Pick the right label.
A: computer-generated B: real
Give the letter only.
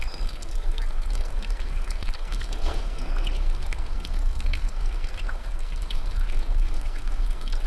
A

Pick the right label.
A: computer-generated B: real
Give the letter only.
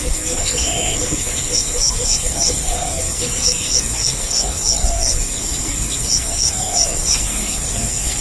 A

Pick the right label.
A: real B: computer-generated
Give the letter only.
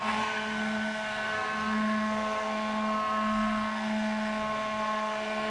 B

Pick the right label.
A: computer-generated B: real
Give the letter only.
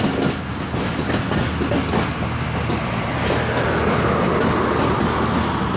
B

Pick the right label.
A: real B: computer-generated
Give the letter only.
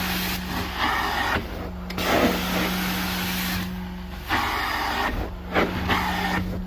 A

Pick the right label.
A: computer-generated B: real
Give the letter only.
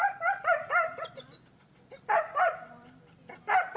B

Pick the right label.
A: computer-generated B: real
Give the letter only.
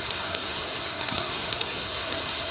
A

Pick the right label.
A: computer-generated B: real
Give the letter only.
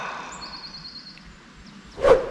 B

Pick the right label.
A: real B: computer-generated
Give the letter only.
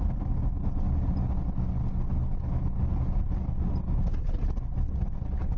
A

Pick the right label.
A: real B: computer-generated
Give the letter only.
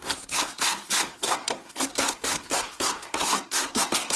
B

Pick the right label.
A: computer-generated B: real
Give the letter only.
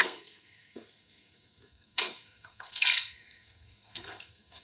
A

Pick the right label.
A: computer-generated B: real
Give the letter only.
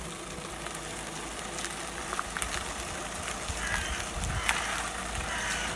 B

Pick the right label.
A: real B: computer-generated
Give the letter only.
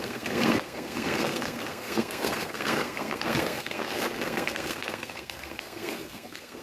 B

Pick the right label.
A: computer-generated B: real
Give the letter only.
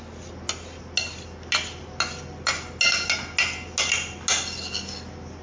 B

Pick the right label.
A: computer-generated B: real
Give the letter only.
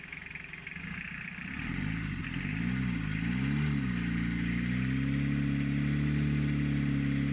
B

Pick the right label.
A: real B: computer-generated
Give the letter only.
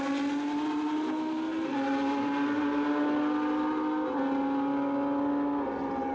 A